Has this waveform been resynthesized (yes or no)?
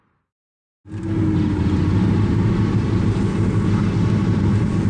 no